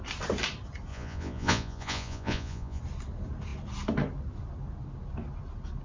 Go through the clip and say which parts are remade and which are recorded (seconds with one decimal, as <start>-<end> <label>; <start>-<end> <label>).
0.0-0.9 recorded; 0.9-2.8 remade; 2.8-5.8 recorded